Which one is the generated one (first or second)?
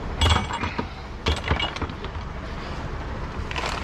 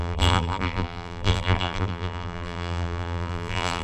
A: second